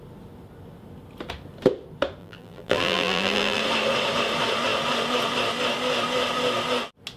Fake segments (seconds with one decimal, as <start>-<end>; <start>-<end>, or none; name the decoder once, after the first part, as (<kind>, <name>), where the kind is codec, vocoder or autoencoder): 2.2-3.6 (vocoder, BigVGAN v2)

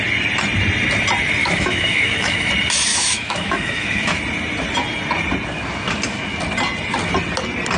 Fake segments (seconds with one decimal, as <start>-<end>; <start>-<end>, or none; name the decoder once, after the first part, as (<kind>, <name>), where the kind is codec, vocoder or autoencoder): 1.4-2.5 (autoencoder, DAC-VAE); 2.9-4.2

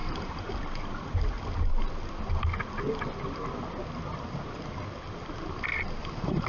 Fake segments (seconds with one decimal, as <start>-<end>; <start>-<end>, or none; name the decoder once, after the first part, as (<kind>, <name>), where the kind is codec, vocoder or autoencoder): 0.0-0.6 (vocoder, BigVGAN v2); 6.0-6.5

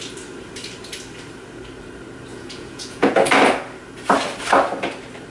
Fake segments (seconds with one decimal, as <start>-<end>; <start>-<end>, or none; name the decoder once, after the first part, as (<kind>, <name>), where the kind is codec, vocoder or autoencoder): 2.3-3.2 (vocoder, Vocos)

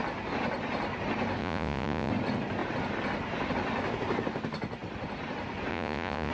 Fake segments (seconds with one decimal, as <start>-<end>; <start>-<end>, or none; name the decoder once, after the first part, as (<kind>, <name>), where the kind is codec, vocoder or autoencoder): 1.4-2.1 (vocoder, Vocos); 5.7-6.3